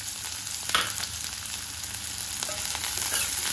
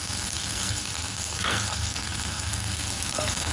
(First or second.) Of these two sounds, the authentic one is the first